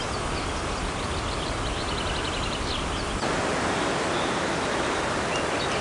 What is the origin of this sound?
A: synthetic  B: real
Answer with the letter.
B